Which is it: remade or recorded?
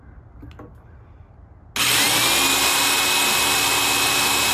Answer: recorded